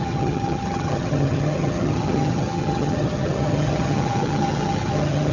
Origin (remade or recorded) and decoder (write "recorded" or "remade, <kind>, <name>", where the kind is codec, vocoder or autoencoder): remade, vocoder, HiFi-GAN